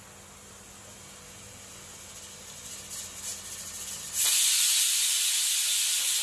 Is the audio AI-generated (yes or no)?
no